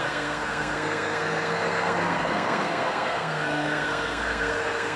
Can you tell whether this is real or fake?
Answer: fake